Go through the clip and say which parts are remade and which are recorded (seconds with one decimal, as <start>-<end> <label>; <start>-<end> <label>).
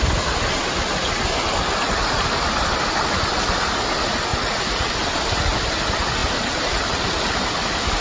0.0-4.3 recorded; 4.3-4.9 remade; 4.9-8.0 recorded